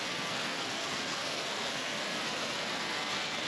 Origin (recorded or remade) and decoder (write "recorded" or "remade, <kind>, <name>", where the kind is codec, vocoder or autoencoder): remade, codec, SNAC